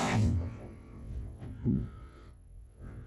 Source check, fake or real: fake